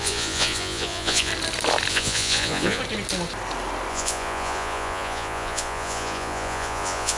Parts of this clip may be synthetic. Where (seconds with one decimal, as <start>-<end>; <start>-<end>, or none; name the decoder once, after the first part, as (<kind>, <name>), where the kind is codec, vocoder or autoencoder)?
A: 0.0-1.3 (vocoder, Vocos); 1.9-2.8; 3.9-7.2